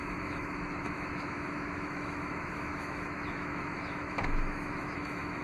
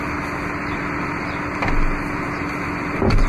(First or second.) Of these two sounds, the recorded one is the second